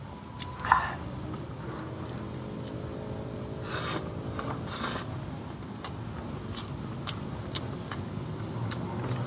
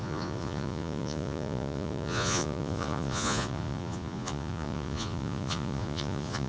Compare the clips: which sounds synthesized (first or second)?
second